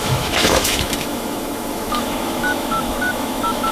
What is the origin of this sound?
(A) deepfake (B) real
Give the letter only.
A